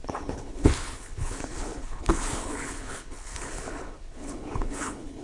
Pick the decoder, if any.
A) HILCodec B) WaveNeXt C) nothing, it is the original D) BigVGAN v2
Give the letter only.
A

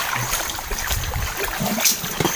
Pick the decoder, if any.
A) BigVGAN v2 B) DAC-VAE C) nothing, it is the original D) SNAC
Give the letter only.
C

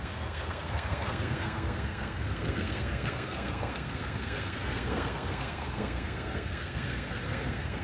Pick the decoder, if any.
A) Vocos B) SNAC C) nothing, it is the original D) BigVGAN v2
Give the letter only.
B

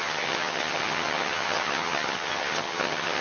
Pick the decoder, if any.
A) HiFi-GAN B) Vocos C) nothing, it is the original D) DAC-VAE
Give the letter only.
A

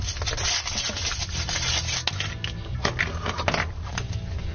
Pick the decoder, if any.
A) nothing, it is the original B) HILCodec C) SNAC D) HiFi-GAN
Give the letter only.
A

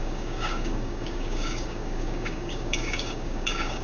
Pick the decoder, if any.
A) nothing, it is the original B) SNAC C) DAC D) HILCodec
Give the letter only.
C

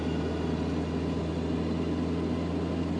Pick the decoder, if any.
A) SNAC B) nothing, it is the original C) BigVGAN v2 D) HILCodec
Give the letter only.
B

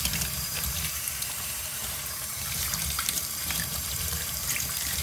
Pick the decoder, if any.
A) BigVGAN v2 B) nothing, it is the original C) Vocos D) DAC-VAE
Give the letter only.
A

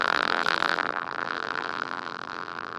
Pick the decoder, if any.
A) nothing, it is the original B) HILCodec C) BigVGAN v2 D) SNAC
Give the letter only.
C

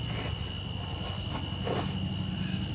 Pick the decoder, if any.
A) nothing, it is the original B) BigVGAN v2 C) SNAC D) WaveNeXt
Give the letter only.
A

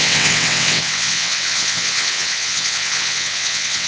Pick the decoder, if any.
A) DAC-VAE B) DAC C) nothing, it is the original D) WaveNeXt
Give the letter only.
D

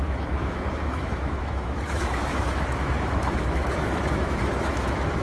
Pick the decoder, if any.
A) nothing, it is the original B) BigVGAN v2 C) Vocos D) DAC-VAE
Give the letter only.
D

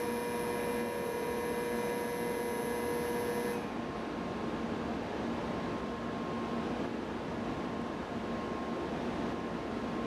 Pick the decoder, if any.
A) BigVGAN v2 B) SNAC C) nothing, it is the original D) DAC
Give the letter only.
C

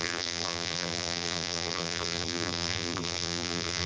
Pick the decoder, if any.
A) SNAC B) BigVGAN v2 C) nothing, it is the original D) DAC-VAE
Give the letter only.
B